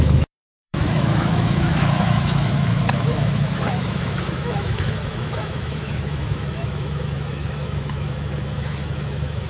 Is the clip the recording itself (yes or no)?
no